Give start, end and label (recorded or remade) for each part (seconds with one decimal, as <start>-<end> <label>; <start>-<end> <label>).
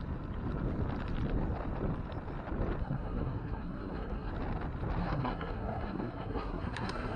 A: 0.0-2.8 recorded; 2.8-4.3 remade; 4.3-5.0 recorded; 5.0-7.2 remade